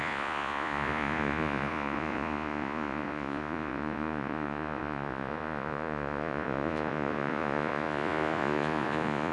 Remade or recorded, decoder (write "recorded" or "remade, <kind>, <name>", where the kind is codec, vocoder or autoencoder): remade, vocoder, Vocos